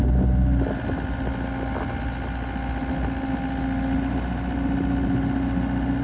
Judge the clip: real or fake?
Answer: real